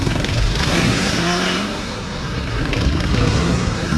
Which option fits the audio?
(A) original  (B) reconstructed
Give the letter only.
B